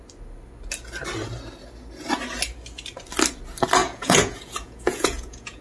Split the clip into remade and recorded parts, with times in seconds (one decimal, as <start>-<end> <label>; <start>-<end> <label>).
0.0-3.8 recorded; 3.8-5.6 remade